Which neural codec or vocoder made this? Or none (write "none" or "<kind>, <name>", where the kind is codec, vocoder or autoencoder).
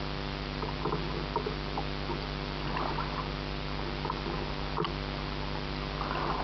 none